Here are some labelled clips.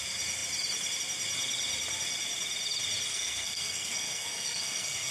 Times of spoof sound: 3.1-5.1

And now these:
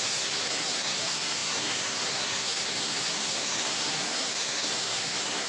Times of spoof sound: 0.0-5.5

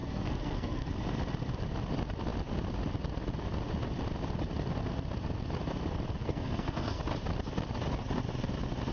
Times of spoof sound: 0.0-0.9; 6.2-7.0

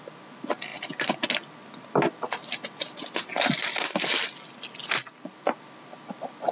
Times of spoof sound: none

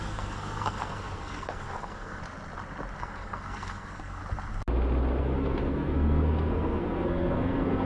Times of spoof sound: 0.0-2.2; 3.0-4.2; 5.2-7.9